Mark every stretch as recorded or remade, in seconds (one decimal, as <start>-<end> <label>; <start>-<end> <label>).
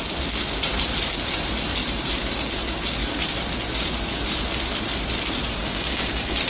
0.0-5.6 recorded; 5.6-6.5 remade